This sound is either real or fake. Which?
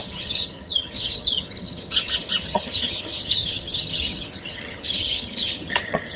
fake